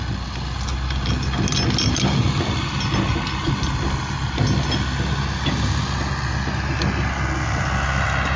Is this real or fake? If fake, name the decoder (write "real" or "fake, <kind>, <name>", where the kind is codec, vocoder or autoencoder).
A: real